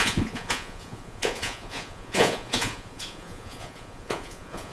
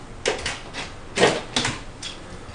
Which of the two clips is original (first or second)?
second